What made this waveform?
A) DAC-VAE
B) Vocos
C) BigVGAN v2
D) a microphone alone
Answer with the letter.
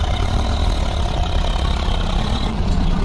B